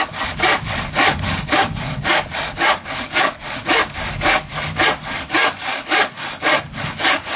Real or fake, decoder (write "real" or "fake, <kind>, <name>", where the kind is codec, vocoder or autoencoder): fake, codec, DAC